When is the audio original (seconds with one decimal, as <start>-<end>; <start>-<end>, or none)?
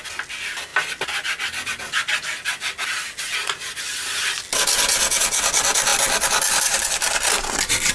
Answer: 0.0-5.9; 6.6-7.9